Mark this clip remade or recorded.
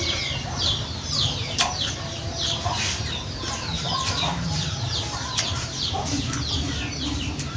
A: remade